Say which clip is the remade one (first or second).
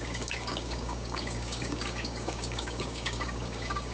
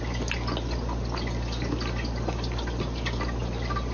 first